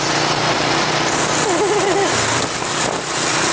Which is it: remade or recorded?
recorded